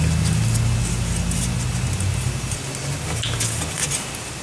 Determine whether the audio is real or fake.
real